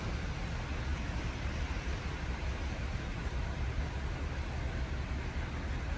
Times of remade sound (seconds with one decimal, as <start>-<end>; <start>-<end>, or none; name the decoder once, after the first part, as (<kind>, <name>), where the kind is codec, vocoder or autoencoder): 0.9-4.5 (vocoder, BigVGAN v2)